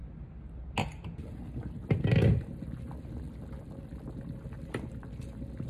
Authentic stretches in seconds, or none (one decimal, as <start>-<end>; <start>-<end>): 0.0-5.7